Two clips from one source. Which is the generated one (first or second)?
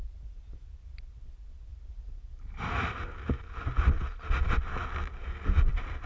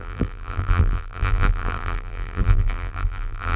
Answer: second